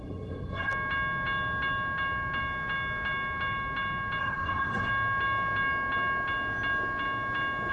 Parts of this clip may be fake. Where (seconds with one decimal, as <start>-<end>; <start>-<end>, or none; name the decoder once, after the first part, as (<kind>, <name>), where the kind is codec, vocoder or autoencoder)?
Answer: 0.0-0.7 (codec, SNAC); 4.2-4.9